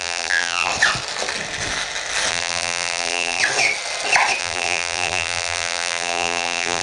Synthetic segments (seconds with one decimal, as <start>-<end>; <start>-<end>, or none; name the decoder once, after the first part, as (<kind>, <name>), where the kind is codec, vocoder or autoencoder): 0.0-0.7 (vocoder, BigVGAN v2); 2.3-3.4; 4.4-6.8